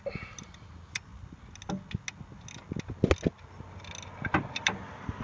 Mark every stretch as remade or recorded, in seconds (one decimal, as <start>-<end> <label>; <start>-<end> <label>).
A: 0.0-5.2 recorded